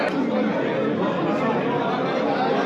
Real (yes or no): yes